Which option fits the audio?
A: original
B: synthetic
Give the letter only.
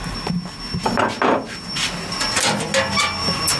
A